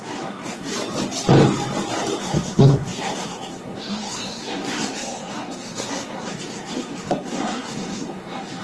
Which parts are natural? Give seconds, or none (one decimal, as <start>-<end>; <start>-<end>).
0.7-2.2